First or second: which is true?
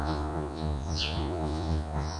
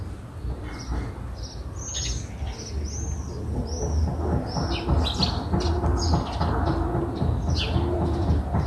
second